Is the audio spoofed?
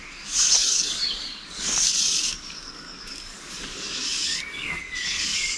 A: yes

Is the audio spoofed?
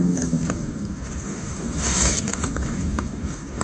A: yes